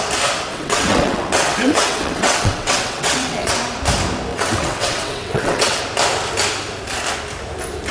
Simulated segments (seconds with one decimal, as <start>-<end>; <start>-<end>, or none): 0.5-3.5; 4.3-5.8